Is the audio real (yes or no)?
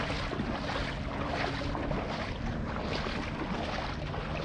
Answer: yes